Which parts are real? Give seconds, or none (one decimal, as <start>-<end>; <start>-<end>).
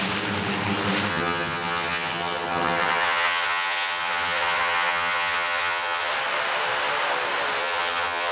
0.0-1.1; 6.1-7.6